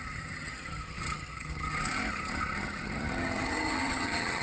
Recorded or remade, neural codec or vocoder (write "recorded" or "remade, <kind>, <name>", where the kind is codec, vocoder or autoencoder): remade, vocoder, HiFi-GAN